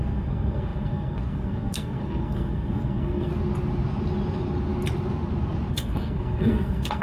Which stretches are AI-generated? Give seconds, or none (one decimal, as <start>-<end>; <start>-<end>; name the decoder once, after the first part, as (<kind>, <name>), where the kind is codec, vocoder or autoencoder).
0.0-3.3 (codec, SNAC); 5.7-7.0